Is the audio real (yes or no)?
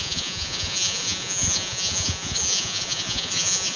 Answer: no